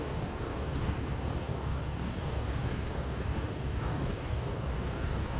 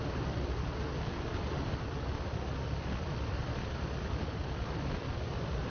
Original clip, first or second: second